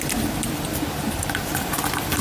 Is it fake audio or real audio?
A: fake